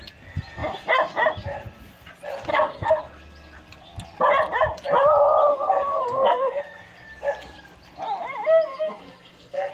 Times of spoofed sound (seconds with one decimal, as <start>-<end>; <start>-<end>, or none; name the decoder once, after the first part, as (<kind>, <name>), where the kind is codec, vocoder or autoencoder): 2.5-3.0 (codec, SNAC); 5.5-6.6; 8.7-9.7